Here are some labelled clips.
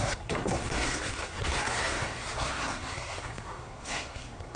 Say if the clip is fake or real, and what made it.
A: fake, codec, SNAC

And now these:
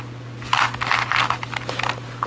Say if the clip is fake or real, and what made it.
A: real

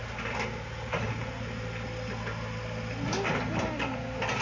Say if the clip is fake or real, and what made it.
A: real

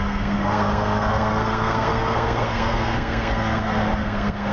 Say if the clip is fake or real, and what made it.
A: fake, codec, SNAC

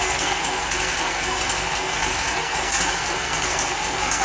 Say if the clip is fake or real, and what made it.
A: fake, codec, SNAC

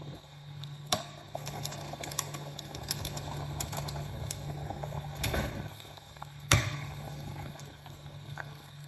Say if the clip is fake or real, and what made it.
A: fake, codec, SNAC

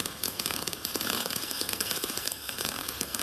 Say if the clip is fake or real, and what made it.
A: fake, codec, SNAC